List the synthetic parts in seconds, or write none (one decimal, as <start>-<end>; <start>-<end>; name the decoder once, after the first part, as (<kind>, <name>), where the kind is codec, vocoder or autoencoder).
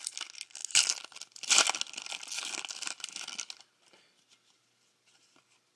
none